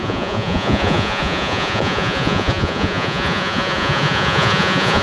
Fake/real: fake